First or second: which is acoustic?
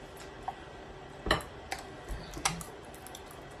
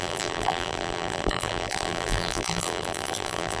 first